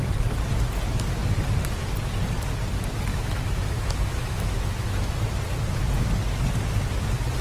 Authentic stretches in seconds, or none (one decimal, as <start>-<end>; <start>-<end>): 0.0-3.1; 5.1-7.4